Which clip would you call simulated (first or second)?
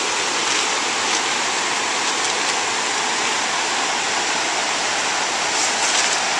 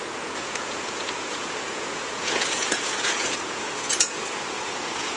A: second